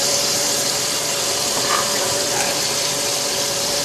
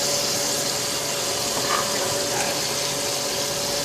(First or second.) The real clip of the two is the second